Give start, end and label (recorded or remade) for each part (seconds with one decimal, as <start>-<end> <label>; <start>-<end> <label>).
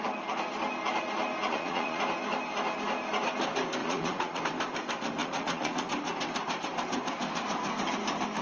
0.0-1.5 recorded; 1.5-2.0 remade; 2.0-3.8 recorded; 3.8-4.4 remade; 4.4-5.2 recorded; 5.2-5.9 remade; 5.9-8.4 recorded